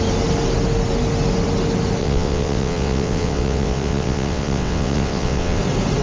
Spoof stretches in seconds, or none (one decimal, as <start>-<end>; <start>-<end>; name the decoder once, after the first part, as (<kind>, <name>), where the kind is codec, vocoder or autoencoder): 2.0-5.6 (vocoder, WaveNeXt)